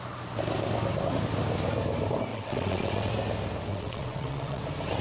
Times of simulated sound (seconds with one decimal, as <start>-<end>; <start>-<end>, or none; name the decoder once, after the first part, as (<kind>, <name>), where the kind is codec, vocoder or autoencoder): 2.3-3.1 (vocoder, WaveNeXt); 3.7-4.6